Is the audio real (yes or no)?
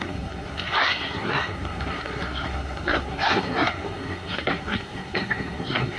no